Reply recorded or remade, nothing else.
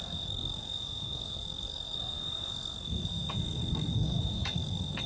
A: remade